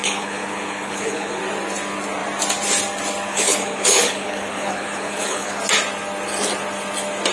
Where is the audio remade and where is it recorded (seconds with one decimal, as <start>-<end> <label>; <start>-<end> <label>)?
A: 0.0-1.4 remade; 1.4-3.3 recorded; 3.3-5.6 remade; 5.6-7.3 recorded